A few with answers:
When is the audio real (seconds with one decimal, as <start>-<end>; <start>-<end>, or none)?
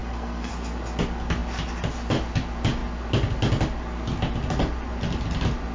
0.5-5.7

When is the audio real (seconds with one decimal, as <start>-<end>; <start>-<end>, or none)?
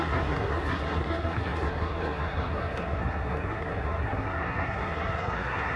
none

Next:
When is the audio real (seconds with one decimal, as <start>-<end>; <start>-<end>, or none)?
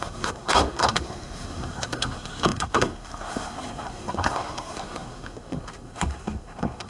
none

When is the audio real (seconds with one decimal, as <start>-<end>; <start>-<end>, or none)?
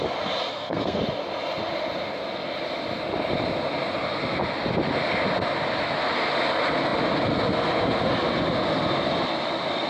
0.0-0.5; 1.0-9.9